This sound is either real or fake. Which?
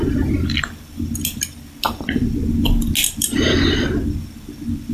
real